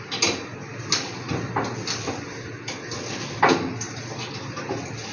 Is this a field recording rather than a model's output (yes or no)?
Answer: yes